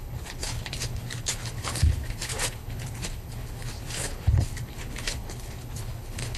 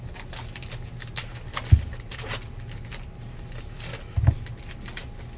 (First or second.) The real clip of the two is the second